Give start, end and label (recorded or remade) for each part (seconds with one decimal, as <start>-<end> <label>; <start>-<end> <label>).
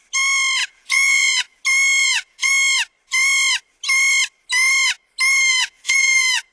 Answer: 0.0-0.6 recorded; 0.6-1.6 remade; 1.6-2.0 recorded; 2.0-2.5 remade; 2.5-5.5 recorded; 5.5-6.5 remade